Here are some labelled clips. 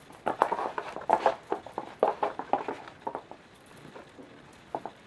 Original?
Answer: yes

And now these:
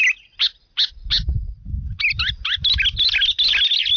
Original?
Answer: yes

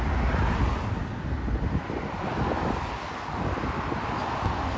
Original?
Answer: yes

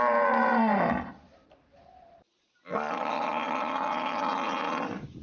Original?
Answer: yes